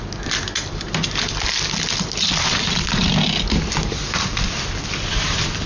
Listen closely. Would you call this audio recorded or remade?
recorded